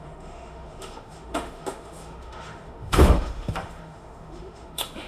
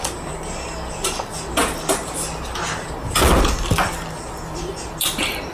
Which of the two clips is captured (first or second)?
second